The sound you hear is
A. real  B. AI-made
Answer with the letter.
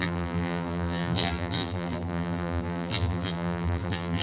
B